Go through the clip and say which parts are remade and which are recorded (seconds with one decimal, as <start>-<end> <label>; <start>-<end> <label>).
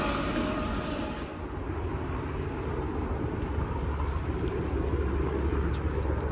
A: 0.0-6.3 recorded